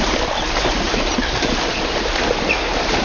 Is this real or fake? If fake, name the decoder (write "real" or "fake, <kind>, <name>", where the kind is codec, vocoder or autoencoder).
real